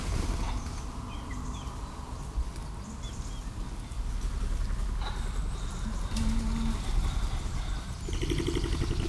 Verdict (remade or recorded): recorded